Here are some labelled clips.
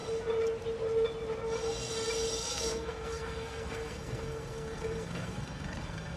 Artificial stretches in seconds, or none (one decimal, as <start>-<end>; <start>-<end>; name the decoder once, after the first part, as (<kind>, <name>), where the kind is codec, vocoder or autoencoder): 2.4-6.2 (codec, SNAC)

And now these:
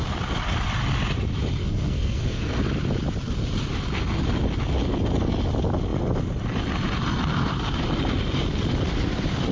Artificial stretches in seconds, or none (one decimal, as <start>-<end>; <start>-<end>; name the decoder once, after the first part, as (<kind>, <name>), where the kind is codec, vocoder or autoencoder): 1.6-2.6 (codec, SNAC)

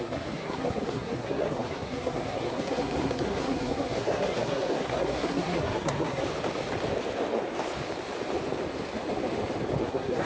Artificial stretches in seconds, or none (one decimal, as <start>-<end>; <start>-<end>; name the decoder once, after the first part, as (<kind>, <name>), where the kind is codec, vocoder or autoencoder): 0.0-6.2 (codec, SNAC); 9.8-10.3